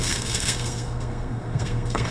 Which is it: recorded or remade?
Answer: remade